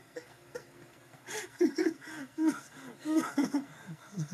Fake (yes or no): yes